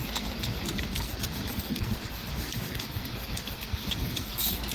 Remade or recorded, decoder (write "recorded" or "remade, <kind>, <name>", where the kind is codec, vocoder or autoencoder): remade, codec, SNAC